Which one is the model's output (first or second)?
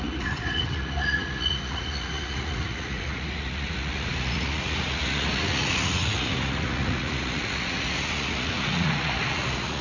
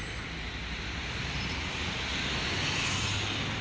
first